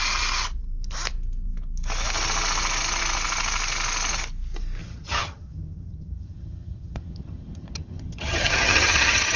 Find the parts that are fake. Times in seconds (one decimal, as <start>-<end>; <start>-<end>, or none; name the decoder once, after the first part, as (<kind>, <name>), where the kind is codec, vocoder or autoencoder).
4.8-9.4 (vocoder, HiFi-GAN)